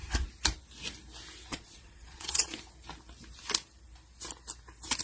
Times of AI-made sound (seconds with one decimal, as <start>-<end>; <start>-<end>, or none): 1.5-2.5